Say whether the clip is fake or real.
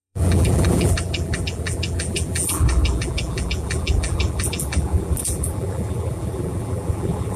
fake